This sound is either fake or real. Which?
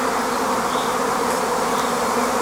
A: fake